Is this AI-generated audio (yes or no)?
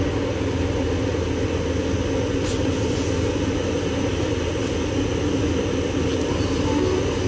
no